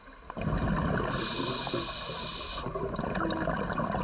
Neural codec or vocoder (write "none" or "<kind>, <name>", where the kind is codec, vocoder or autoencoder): none